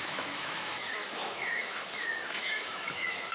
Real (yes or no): no